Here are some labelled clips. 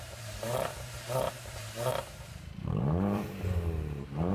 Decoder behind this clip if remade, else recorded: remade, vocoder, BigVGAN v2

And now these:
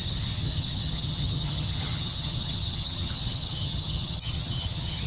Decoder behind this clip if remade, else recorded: remade, vocoder, HiFi-GAN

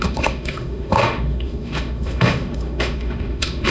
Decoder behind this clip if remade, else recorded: remade, autoencoder, DAC-VAE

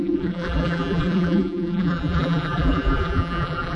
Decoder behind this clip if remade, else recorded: remade, vocoder, BigVGAN v2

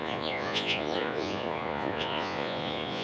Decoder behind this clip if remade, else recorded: remade, vocoder, Vocos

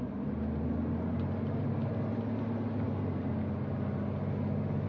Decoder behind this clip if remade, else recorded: recorded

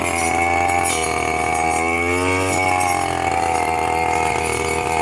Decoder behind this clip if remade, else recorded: recorded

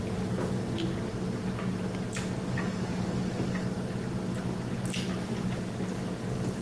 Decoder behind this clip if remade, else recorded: recorded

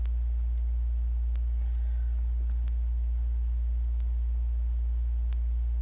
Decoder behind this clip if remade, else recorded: recorded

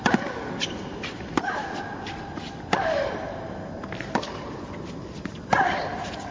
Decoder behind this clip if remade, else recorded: recorded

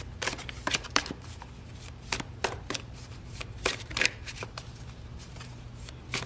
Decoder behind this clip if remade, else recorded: remade, vocoder, BigVGAN v2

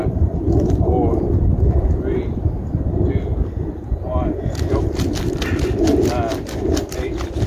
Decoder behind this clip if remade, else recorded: recorded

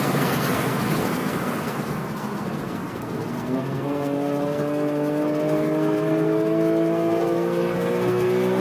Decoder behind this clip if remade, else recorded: remade, codec, SNAC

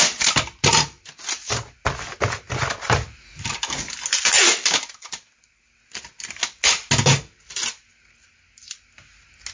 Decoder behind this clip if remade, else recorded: recorded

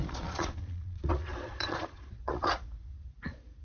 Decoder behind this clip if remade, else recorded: remade, vocoder, Vocos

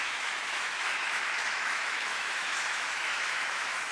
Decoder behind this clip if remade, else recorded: remade, autoencoder, DAC-VAE